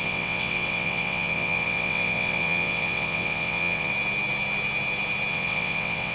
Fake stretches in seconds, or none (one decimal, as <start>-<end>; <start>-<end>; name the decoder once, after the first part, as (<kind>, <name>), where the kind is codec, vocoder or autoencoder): 0.0-3.9 (vocoder, WaveNeXt); 5.3-6.1